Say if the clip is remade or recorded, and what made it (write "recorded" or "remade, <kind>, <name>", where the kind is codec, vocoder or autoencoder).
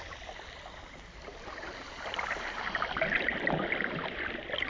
recorded